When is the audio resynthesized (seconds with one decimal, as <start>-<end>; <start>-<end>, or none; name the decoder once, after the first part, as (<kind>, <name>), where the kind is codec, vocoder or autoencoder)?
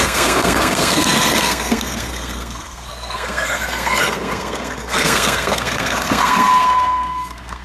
0.0-7.6 (codec, SNAC)